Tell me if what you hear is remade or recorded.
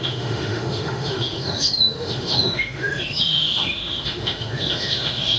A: remade